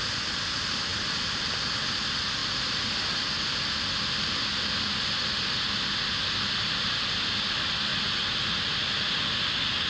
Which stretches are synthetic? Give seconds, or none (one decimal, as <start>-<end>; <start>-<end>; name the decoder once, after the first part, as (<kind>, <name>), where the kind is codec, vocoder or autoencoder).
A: none